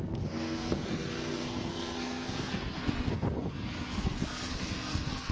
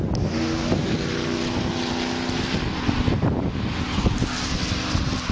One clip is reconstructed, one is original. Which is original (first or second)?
second